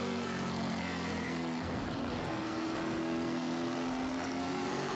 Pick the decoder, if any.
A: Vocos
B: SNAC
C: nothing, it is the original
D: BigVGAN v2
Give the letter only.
B